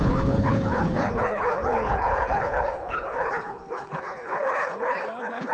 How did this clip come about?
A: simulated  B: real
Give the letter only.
A